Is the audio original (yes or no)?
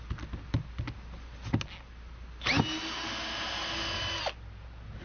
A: yes